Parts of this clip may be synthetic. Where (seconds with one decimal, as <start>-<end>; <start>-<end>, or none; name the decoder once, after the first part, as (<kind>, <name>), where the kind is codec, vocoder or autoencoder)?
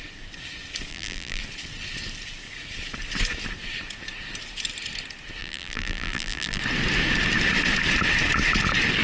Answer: 0.9-1.4 (vocoder, BigVGAN v2); 5.4-6.6